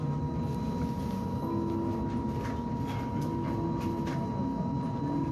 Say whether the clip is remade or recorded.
recorded